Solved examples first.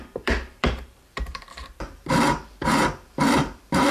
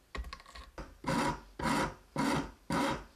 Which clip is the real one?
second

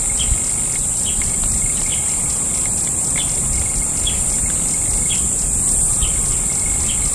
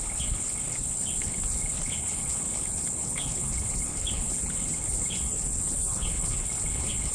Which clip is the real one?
first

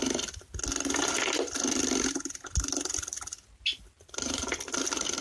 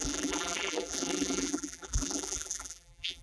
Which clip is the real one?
first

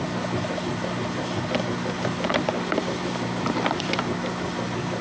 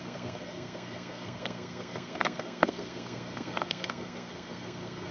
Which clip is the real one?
first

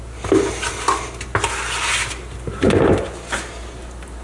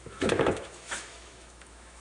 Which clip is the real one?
first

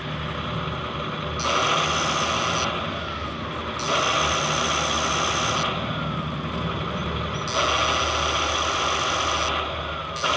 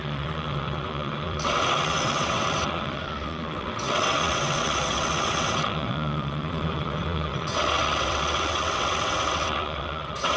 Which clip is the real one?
first